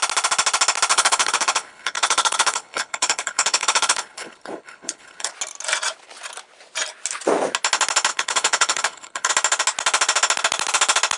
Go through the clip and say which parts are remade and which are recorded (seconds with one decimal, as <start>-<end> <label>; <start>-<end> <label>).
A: 0.0-0.9 recorded; 0.9-5.3 remade; 5.3-8.1 recorded; 8.1-9.3 remade; 9.3-11.2 recorded